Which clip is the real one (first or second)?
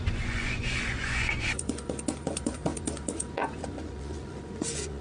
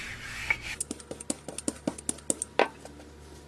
second